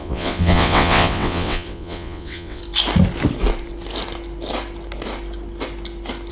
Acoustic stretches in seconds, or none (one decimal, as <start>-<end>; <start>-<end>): 2.6-6.3